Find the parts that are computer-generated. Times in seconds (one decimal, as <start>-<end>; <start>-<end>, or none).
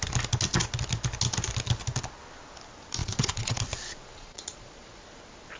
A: 3.0-5.0